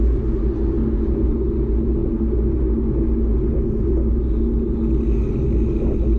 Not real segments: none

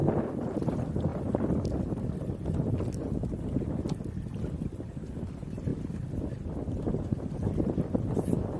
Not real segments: none

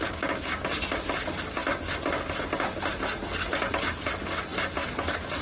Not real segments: none

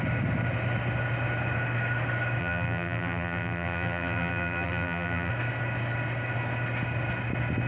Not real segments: 2.4-5.3

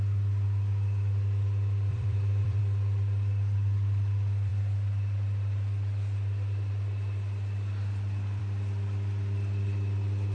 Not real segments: 1.9-2.6

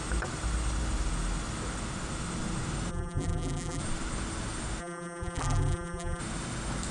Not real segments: 2.9-3.8; 4.8-6.2